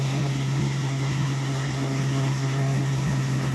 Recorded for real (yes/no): no